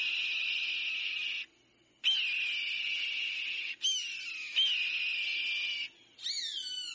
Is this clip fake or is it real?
real